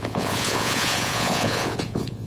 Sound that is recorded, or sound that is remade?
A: remade